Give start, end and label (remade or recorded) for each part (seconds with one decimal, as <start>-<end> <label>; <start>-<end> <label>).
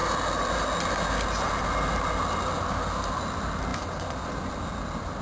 0.0-5.2 recorded